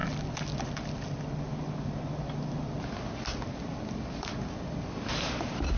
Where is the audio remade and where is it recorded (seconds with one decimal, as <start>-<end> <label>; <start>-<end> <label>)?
0.0-5.8 recorded